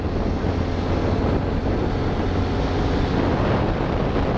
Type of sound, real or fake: real